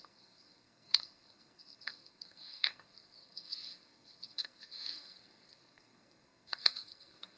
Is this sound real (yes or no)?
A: no